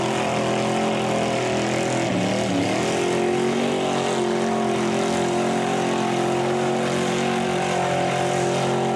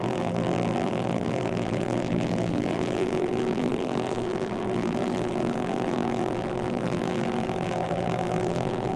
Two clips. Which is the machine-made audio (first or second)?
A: second